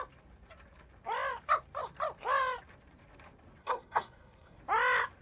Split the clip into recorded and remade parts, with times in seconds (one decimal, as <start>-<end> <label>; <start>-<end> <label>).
0.0-3.6 recorded; 3.6-4.6 remade; 4.6-5.2 recorded

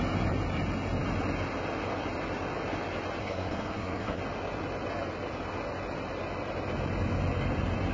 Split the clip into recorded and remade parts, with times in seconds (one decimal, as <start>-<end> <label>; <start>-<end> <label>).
0.0-3.2 recorded; 3.2-4.2 remade; 4.2-7.9 recorded

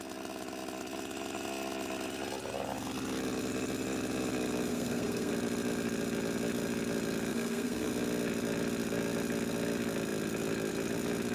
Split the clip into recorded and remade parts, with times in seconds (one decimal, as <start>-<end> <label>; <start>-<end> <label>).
0.0-4.7 recorded; 4.7-5.3 remade; 5.3-7.3 recorded; 7.3-7.9 remade; 7.9-11.3 recorded